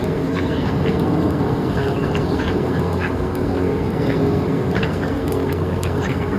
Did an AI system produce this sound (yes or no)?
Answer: yes